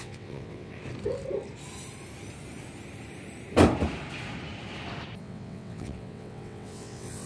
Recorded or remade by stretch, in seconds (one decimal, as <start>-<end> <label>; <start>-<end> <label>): 0.0-0.8 remade; 0.8-5.2 recorded; 5.2-7.3 remade